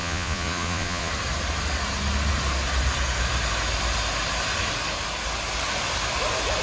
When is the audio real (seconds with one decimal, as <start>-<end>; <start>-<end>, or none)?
1.1-6.6